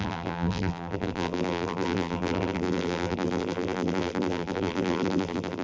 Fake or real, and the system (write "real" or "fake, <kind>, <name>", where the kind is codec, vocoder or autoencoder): fake, vocoder, BigVGAN v2